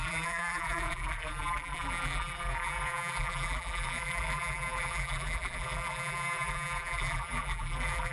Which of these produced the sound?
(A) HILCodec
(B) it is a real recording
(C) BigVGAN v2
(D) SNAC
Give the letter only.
C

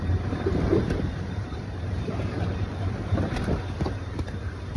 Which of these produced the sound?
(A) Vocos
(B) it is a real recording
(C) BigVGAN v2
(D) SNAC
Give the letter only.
C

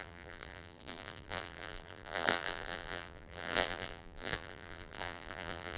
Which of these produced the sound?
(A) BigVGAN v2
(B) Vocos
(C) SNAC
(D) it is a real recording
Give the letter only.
A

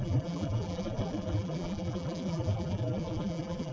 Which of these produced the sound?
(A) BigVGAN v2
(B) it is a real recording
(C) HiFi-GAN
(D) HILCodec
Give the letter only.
A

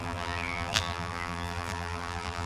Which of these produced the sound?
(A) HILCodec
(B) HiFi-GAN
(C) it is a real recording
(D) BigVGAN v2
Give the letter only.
D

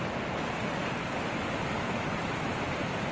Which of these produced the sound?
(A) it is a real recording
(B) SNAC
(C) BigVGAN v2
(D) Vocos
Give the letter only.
A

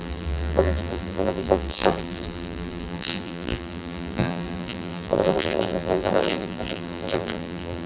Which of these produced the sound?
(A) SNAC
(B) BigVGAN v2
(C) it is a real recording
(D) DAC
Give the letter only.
B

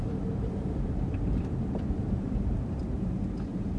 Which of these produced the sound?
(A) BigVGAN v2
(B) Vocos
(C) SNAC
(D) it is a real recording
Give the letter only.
A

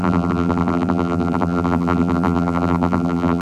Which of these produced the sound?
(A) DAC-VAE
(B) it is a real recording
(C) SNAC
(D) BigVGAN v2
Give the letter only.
D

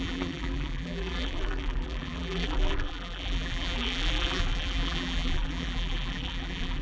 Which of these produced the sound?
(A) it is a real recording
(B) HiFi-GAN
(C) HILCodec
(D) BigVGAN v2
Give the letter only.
D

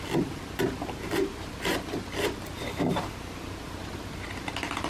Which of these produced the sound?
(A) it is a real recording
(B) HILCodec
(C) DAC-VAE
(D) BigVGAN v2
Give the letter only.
A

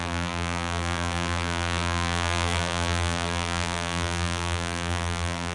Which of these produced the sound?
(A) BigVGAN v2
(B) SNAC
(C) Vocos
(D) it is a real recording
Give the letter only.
A